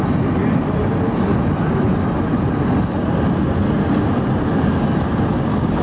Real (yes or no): yes